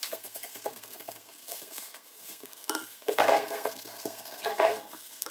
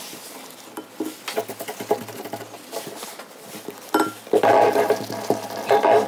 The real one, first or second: second